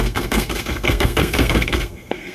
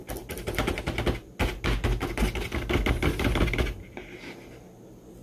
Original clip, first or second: second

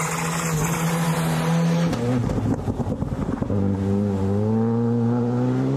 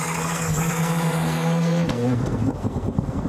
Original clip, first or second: first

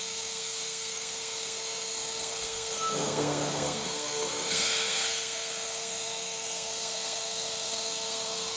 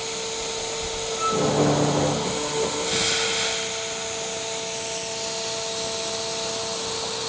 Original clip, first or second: second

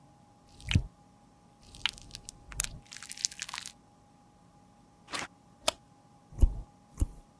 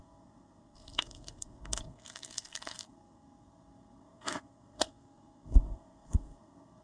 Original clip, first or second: first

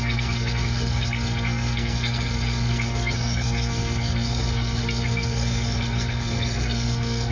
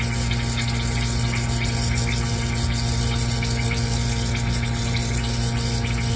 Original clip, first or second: second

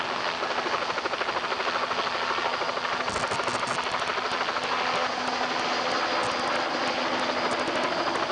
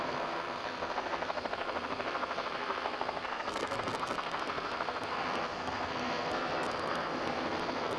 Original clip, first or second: first